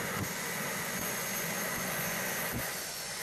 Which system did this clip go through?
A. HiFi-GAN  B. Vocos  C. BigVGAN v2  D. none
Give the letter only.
B